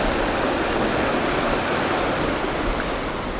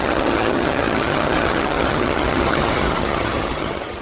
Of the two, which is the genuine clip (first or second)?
first